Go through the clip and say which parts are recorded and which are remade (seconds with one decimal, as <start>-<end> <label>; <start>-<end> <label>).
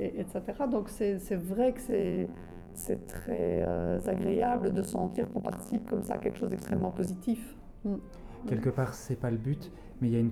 0.0-1.9 recorded; 1.9-7.1 remade; 7.1-10.3 recorded